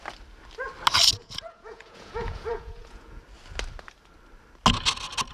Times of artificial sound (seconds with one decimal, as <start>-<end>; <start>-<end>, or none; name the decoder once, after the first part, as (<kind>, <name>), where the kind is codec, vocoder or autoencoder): 1.2-3.2 (vocoder, Vocos)